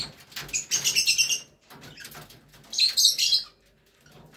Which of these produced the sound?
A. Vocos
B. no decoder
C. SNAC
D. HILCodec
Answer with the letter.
B